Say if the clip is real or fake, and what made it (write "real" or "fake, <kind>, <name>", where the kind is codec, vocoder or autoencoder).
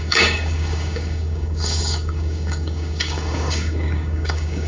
fake, codec, DAC